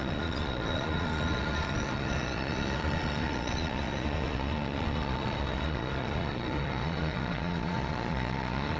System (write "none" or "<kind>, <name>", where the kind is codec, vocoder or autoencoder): vocoder, Vocos